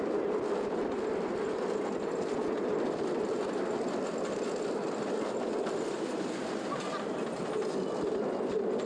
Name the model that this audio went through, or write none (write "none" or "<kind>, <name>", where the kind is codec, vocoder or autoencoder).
none